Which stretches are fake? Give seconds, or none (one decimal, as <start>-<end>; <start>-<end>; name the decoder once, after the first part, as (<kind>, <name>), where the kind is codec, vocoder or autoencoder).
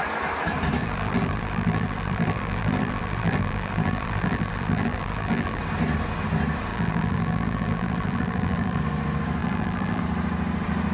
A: 0.8-5.6 (vocoder, BigVGAN v2); 6.7-8.8; 9.4-10.0